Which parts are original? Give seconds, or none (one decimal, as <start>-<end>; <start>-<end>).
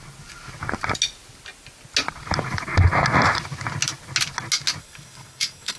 0.0-4.8